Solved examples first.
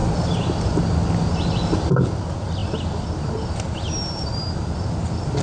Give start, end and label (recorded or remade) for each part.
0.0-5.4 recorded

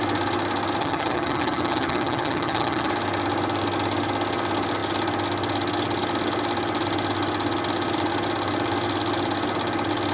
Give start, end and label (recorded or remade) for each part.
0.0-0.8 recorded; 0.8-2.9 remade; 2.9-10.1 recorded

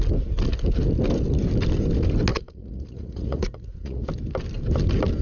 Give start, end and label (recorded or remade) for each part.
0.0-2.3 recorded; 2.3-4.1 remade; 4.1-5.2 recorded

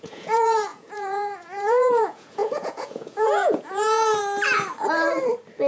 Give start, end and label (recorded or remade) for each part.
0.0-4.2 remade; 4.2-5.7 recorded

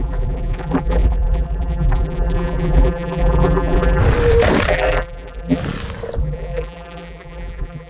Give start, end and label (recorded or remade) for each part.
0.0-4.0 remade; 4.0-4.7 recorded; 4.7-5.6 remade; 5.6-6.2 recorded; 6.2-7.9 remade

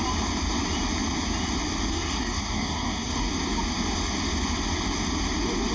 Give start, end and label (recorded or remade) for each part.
0.0-1.9 recorded; 1.9-3.3 remade; 3.3-5.7 recorded

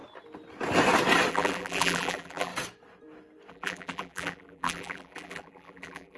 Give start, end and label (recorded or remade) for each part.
0.0-1.3 recorded; 1.3-2.5 remade; 2.5-3.5 recorded; 3.5-6.2 remade